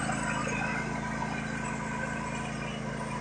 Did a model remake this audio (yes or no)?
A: no